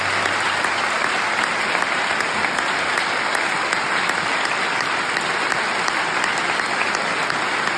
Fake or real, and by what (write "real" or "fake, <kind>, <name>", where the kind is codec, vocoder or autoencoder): real